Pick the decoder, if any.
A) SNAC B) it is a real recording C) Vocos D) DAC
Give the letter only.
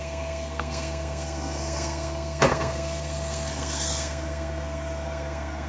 A